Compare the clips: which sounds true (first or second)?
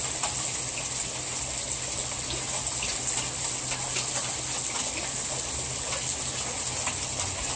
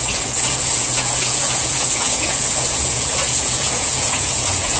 first